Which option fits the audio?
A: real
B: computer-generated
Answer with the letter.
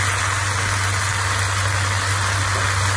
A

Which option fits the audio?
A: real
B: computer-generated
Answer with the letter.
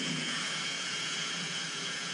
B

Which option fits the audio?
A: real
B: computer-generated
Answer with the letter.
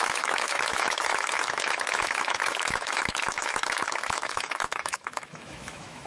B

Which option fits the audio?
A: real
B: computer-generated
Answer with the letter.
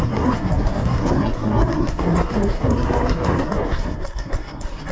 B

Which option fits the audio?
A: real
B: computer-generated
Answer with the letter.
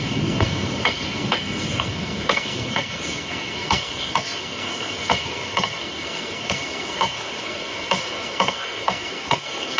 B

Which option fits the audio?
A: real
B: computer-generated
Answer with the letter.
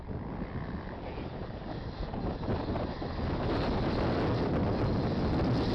A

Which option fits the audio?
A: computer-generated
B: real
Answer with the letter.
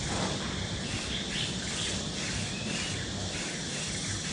B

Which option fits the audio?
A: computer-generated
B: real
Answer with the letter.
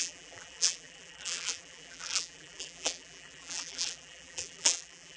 A